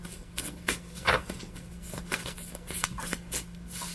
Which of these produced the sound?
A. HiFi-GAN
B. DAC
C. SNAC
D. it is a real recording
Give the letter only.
C